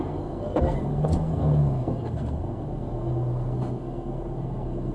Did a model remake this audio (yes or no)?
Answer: yes